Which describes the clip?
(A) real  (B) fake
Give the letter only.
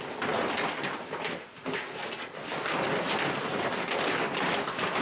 A